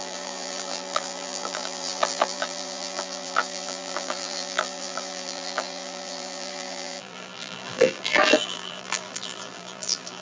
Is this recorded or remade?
remade